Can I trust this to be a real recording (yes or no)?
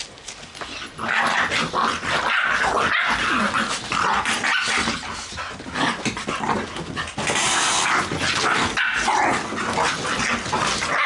yes